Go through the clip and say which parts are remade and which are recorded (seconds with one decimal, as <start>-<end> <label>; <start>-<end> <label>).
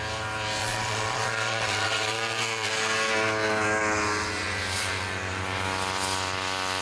0.0-0.6 recorded; 0.6-2.7 remade; 2.7-6.8 recorded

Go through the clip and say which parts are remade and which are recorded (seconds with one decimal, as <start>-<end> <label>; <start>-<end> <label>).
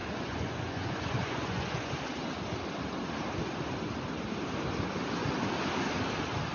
0.0-1.9 remade; 1.9-6.5 recorded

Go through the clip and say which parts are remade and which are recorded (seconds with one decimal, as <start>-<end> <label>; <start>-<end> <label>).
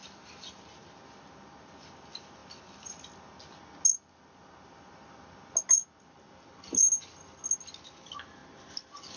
0.0-9.2 recorded